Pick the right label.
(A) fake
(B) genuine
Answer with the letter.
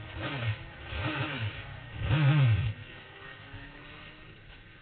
A